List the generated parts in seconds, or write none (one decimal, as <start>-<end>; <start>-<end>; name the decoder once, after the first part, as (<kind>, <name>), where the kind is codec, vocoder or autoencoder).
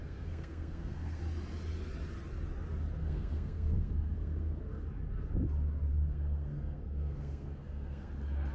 0.0-1.2 (codec, SNAC); 3.0-4.6; 5.9-8.1